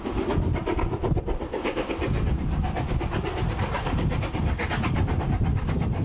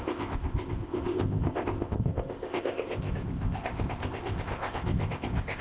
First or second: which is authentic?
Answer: first